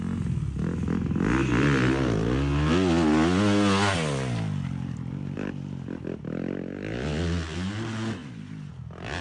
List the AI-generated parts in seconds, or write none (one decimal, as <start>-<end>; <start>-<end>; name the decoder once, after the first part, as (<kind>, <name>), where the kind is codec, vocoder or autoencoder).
none